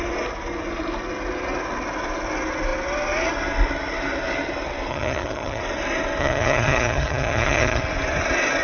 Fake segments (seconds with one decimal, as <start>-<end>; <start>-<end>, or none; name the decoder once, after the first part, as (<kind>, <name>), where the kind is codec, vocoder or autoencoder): 4.9-5.6 (vocoder, HiFi-GAN); 6.2-7.8